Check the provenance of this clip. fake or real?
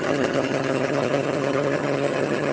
fake